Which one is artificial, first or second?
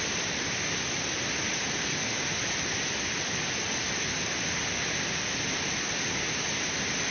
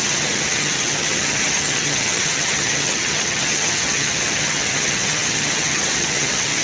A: second